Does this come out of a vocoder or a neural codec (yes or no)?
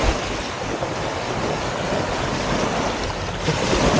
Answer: no